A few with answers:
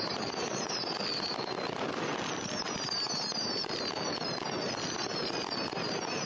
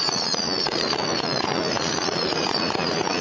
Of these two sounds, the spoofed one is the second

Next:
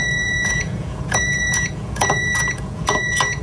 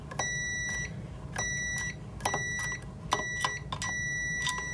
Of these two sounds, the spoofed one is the first